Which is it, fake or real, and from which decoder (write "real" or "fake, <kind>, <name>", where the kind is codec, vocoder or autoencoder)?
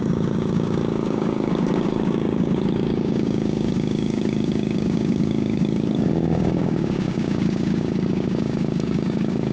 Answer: fake, codec, DAC